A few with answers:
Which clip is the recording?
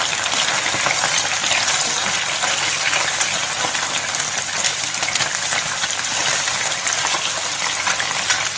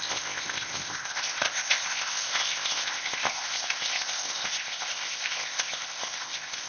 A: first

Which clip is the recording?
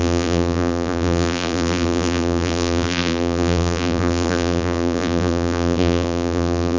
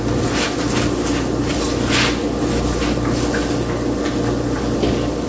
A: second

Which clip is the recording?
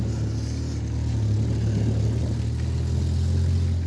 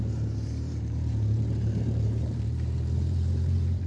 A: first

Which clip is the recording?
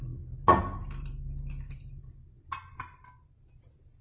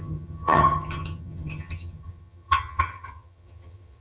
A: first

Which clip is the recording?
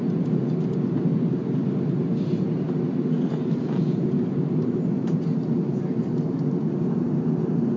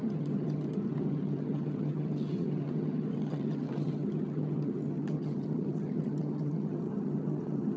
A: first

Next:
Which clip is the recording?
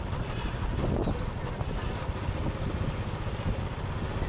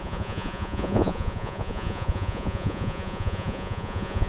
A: first